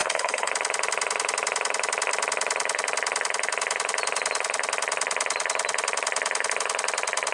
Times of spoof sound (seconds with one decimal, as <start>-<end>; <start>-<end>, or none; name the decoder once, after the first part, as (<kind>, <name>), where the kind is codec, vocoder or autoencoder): 0.0-0.5 (codec, HILCodec)